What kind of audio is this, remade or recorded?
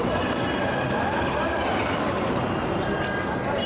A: recorded